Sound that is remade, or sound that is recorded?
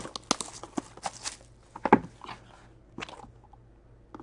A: recorded